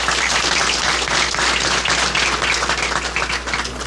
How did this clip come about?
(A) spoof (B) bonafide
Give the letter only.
B